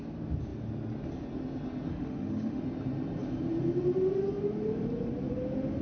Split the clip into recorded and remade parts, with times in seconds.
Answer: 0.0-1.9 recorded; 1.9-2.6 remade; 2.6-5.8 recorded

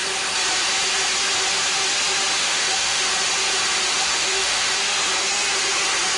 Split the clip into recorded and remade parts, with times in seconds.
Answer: 0.0-2.4 recorded; 2.4-3.0 remade; 3.0-3.9 recorded; 3.9-4.7 remade; 4.7-6.2 recorded

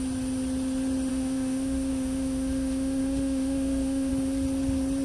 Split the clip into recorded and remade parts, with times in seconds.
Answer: 0.0-1.1 recorded; 1.1-4.1 remade; 4.1-5.0 recorded

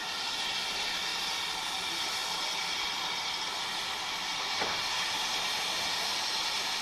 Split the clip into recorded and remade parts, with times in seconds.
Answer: 0.0-6.8 recorded

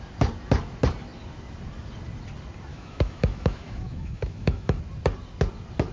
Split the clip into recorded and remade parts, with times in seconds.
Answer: 0.0-2.7 recorded; 2.7-4.8 remade; 4.8-5.9 recorded

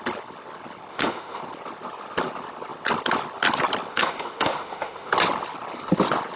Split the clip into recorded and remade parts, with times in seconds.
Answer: 0.0-0.9 recorded; 0.9-1.4 remade; 1.4-3.9 recorded; 3.9-5.1 remade; 5.1-6.4 recorded